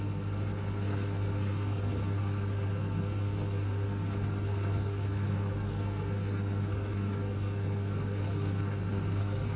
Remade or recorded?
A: remade